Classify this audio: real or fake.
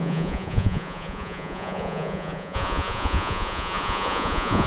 fake